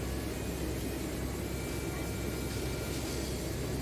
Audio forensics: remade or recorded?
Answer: recorded